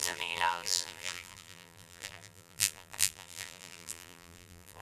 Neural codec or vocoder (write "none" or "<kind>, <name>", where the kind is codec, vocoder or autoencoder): vocoder, BigVGAN v2